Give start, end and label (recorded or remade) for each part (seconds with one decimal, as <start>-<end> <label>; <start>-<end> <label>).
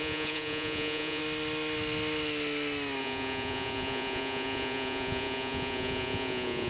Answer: 0.0-1.2 remade; 1.2-3.0 recorded; 3.0-6.7 remade